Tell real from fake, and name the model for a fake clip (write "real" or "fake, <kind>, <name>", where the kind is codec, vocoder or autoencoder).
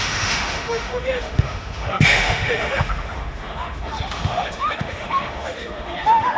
fake, autoencoder, DAC-VAE